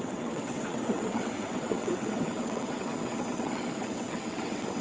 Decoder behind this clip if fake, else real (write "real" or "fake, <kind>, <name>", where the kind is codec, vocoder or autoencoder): fake, vocoder, WaveNeXt